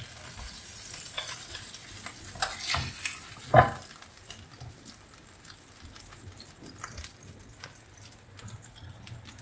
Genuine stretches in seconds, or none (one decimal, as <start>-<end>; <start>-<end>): 0.0-9.4